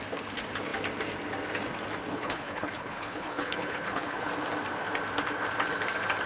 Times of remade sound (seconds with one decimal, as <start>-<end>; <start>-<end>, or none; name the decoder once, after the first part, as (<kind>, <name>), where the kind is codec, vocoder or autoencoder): 2.1-4.3 (codec, HILCodec)

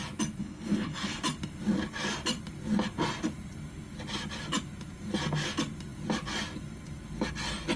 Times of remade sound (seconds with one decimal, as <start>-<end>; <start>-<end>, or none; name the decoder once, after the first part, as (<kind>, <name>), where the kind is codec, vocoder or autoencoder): 0.4-1.2 (codec, HILCodec)

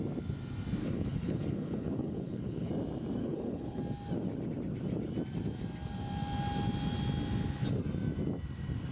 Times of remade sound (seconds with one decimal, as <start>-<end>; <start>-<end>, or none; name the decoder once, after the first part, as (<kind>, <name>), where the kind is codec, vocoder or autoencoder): 0.8-2.7 (codec, HILCodec); 3.2-3.8

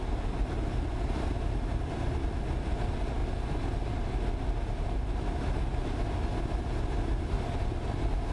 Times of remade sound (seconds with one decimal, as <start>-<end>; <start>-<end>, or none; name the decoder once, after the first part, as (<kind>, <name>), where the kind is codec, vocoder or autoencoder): none

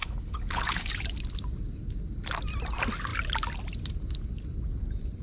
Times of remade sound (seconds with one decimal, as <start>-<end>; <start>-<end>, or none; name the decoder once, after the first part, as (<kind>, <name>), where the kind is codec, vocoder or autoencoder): 0.0-0.9 (codec, HILCodec)